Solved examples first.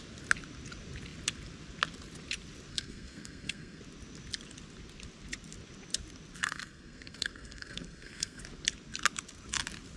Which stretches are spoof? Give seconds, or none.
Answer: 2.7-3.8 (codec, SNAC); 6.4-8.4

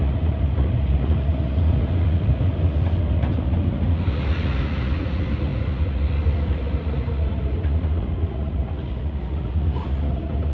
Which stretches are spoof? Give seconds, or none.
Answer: 0.0-10.5 (vocoder, Vocos)

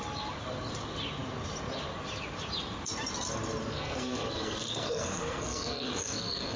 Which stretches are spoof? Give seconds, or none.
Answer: 3.6-6.6 (codec, SNAC)

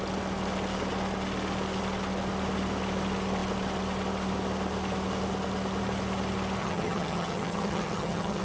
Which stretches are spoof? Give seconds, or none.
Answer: 6.6-8.4 (vocoder, HiFi-GAN)

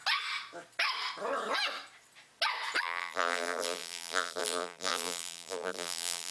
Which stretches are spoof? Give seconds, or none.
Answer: 2.8-6.3 (vocoder, BigVGAN v2)

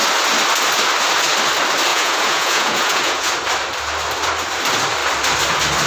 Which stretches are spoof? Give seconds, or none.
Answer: 1.9-3.3 (vocoder, Vocos)

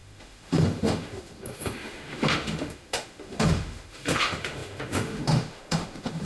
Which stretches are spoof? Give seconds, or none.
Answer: 0.0-6.2 (autoencoder, DAC-VAE)